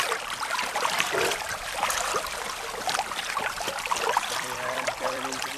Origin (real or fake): fake